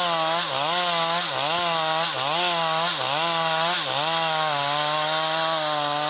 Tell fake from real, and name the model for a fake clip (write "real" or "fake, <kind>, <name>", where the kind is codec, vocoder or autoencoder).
real